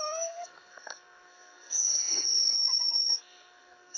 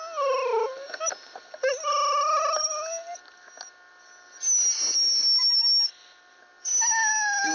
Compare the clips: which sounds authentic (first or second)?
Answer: second